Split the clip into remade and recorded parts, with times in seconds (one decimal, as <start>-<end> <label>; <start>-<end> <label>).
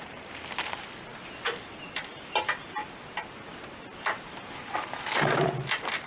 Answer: 0.0-6.1 recorded